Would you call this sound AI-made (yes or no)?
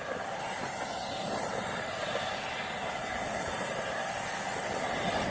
no